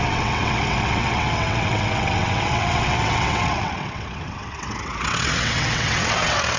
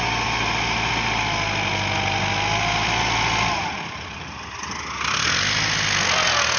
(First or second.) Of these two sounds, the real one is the second